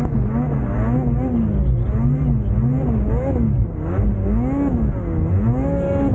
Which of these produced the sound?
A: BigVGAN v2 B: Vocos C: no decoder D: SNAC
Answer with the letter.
C